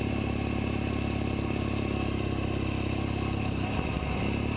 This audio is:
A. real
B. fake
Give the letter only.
A